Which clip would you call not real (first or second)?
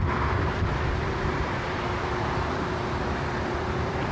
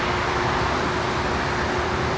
first